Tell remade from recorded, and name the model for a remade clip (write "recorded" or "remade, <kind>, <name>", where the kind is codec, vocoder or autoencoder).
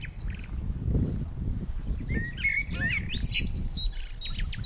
recorded